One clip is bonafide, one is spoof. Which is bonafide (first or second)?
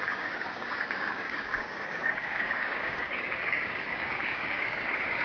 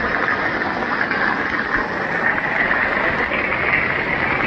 second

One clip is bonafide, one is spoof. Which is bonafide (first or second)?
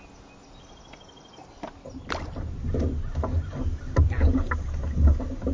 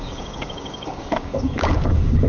first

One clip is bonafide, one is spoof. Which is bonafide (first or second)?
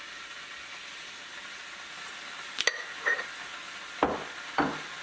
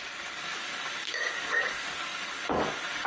first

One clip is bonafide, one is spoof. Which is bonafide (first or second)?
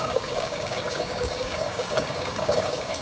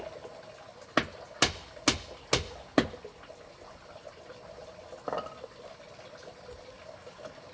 second